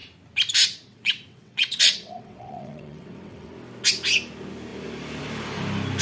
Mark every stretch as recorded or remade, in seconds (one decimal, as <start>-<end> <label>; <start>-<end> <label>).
0.0-0.9 recorded; 0.9-3.5 remade; 3.5-6.0 recorded

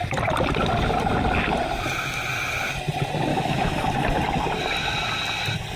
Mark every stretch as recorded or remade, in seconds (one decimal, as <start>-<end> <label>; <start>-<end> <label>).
0.0-3.3 recorded; 3.3-3.9 remade; 3.9-5.8 recorded